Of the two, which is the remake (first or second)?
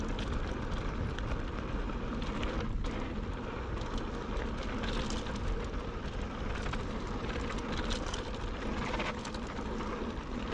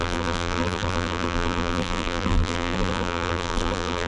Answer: second